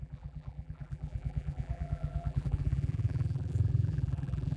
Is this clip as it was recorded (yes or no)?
no